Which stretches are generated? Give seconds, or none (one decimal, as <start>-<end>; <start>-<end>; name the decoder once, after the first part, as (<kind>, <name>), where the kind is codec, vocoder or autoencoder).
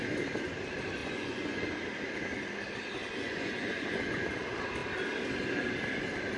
1.0-1.7 (vocoder, Vocos); 3.2-4.3